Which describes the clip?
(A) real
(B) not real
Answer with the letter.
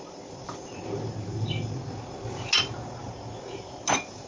A